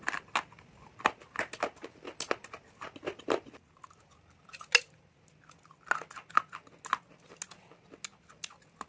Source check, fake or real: real